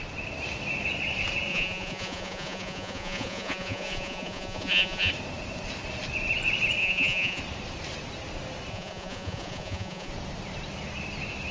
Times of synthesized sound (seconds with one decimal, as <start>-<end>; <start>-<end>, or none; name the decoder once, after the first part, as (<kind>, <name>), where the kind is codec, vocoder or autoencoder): 1.5-5.1 (vocoder, Vocos); 6.8-7.4; 8.7-10.1